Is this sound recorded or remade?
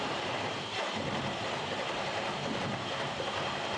remade